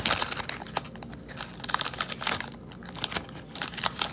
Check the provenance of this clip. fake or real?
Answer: real